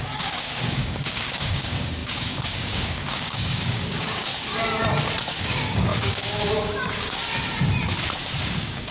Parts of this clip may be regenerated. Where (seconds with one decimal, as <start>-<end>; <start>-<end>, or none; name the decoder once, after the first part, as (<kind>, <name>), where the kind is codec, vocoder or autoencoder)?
0.0-4.3 (codec, DAC); 5.4-7.2; 8.4-8.9